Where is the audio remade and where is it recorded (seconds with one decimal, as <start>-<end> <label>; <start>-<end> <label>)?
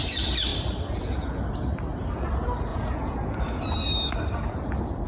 0.0-2.7 recorded; 2.7-3.6 remade; 3.6-5.1 recorded